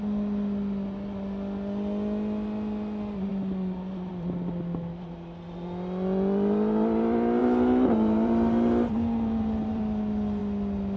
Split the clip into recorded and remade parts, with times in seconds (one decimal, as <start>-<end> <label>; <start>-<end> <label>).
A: 0.0-7.4 recorded; 7.4-9.8 remade; 9.8-11.0 recorded